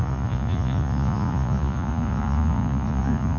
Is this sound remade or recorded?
remade